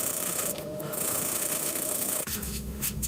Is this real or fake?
fake